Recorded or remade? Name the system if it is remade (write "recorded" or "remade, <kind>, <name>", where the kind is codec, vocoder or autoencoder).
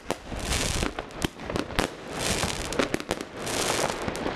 recorded